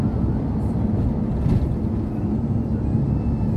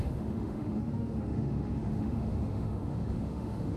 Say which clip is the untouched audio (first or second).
first